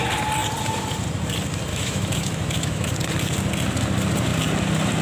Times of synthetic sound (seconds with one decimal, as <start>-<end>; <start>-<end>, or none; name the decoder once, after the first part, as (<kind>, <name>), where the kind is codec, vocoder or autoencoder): 1.7-2.9 (autoencoder, DAC-VAE)